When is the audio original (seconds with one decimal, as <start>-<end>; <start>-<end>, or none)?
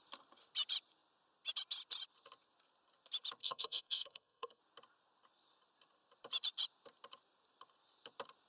0.0-3.4; 4.6-8.5